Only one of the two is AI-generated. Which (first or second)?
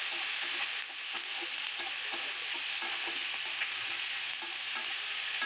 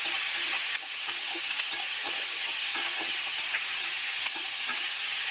second